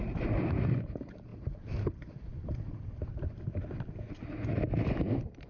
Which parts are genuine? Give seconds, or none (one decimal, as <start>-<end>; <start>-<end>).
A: 0.0-5.5

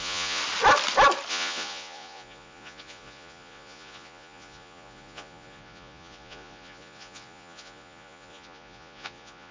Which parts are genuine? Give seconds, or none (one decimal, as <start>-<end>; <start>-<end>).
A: 0.4-1.3

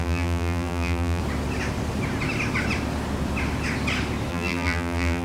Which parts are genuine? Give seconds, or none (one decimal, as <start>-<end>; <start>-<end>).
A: 1.2-4.3